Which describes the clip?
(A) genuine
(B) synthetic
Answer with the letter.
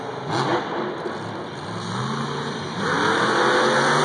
A